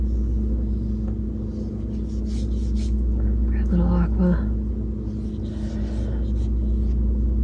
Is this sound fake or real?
real